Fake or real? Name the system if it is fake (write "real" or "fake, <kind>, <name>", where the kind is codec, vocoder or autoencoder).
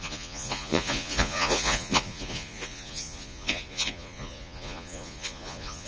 fake, vocoder, Vocos